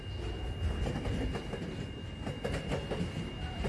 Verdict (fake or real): real